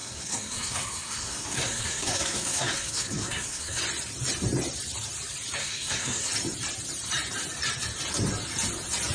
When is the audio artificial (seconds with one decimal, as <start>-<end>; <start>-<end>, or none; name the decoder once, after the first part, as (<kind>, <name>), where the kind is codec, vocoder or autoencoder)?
0.0-3.8 (codec, SNAC); 5.6-6.3